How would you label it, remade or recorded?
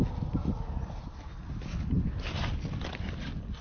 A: recorded